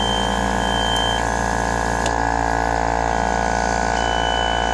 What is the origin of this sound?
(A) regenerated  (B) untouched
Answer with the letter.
B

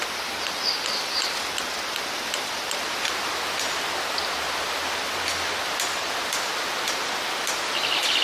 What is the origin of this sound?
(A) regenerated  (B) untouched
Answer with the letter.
B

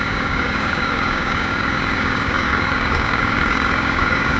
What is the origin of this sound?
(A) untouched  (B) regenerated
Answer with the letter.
B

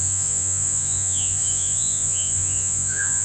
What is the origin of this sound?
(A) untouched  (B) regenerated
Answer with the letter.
B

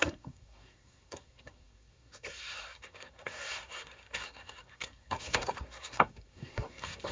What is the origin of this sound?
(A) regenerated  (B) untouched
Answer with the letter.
A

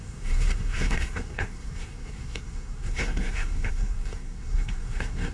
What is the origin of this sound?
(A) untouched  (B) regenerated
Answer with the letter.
B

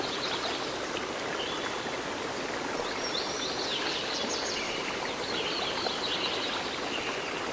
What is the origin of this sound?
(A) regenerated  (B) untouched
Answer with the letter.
B